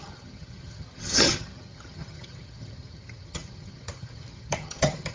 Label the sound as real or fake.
fake